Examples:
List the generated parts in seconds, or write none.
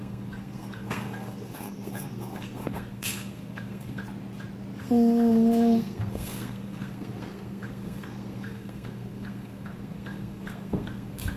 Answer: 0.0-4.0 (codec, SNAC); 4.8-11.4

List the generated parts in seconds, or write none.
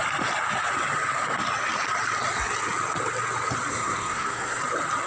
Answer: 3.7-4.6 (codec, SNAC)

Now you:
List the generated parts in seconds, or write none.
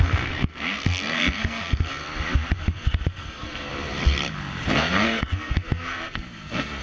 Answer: 0.0-2.0 (codec, SNAC); 2.6-3.7; 4.6-6.8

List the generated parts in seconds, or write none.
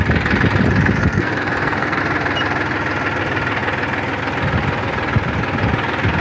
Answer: 1.0-2.0 (codec, SNAC)